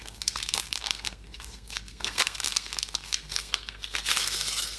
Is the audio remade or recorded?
remade